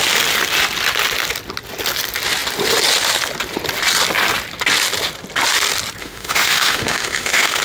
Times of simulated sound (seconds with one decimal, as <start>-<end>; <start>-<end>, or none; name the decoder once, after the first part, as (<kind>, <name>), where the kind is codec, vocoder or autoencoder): 6.0-7.6 (autoencoder, DAC-VAE)